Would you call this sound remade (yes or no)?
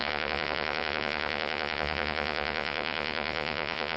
yes